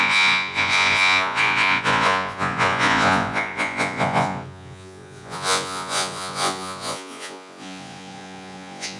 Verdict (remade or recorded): remade